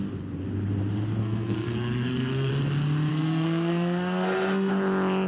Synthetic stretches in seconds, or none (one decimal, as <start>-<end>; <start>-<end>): 1.2-2.5; 3.1-4.7